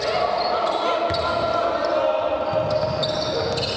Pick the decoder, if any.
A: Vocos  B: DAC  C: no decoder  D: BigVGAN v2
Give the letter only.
C